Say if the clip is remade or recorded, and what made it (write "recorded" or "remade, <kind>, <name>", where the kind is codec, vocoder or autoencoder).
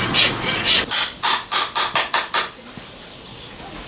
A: recorded